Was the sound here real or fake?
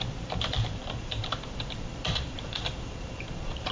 fake